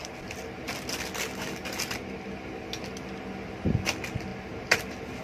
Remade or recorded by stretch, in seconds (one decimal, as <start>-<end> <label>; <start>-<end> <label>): 0.0-4.3 recorded; 4.3-5.2 remade